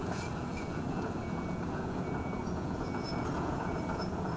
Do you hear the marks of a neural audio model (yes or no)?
yes